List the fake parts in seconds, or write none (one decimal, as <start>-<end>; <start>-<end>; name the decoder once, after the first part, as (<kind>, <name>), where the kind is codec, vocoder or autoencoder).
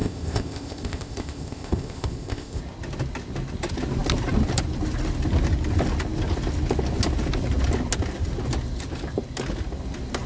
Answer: 0.0-2.6 (codec, ZipCodec)